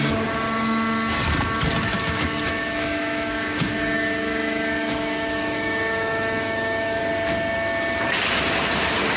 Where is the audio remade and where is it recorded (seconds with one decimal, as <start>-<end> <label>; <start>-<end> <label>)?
0.0-1.9 recorded; 1.9-7.0 remade; 7.0-9.2 recorded